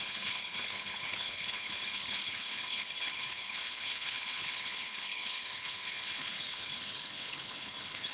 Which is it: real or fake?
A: fake